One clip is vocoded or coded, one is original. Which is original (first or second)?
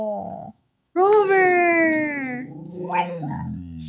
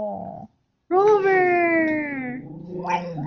second